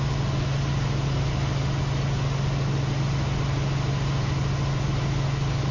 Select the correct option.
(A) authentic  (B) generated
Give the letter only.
A